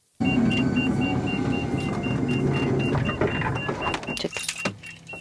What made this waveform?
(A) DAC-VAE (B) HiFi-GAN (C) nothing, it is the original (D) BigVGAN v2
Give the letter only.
C